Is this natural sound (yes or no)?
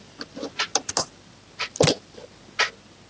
yes